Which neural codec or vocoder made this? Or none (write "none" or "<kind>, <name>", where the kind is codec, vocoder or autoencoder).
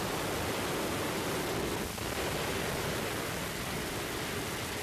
none